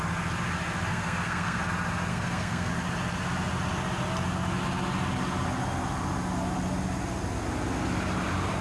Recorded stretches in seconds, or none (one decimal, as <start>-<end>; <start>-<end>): 0.0-0.9; 1.6-2.1; 2.7-8.6